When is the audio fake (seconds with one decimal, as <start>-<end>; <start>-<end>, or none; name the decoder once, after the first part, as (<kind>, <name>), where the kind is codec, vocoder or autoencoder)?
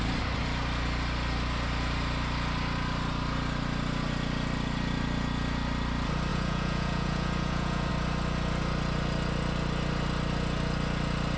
6.3-7.9 (vocoder, Vocos)